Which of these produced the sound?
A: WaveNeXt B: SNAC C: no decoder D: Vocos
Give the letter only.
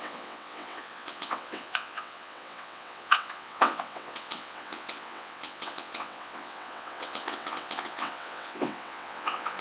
A